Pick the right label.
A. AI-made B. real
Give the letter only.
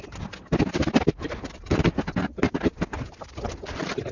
B